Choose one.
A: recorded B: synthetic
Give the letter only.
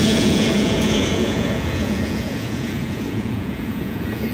B